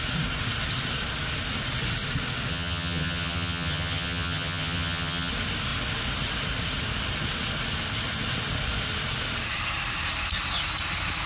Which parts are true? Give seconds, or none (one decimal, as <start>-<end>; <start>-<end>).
0.0-2.5; 5.3-11.3